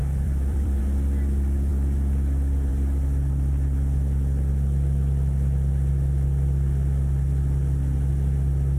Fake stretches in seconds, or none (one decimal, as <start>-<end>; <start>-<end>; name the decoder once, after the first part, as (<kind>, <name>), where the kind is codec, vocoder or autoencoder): 0.0-0.8 (vocoder, BigVGAN v2)